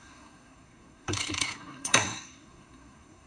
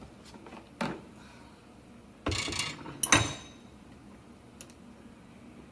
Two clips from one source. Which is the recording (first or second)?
second